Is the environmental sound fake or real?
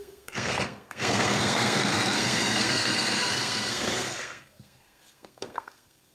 fake